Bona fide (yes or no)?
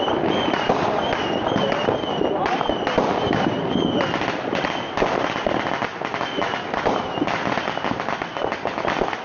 yes